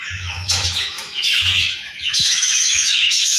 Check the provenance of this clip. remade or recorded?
remade